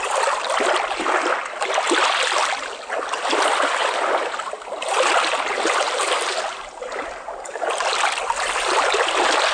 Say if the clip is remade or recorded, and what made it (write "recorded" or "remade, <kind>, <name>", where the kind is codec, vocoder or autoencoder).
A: recorded